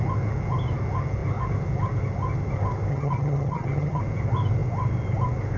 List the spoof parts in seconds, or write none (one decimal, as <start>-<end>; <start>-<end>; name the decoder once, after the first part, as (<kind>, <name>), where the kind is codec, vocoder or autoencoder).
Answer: 2.9-4.0 (vocoder, HiFi-GAN)